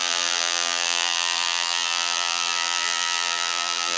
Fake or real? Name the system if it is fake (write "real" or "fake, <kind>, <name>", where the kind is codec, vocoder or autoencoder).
fake, vocoder, BigVGAN v2